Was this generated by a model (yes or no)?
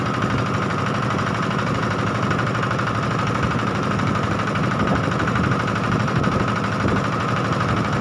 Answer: yes